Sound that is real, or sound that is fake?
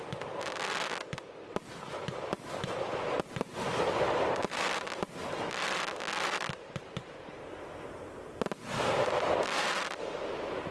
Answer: real